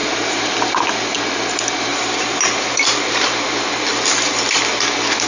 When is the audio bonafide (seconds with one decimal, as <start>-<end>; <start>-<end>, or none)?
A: 0.8-1.9; 4.6-5.3